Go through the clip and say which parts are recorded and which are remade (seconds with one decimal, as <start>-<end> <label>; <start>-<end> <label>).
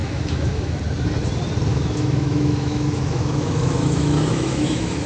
0.0-0.8 remade; 0.8-1.7 recorded; 1.7-5.1 remade